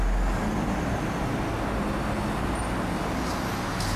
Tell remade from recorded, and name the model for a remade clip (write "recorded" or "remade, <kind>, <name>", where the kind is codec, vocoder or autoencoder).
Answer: recorded